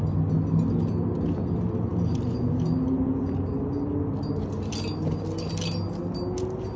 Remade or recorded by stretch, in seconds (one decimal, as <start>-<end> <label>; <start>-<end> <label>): 0.0-6.8 recorded